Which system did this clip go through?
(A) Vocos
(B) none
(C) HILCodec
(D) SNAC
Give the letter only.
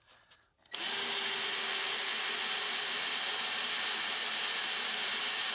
B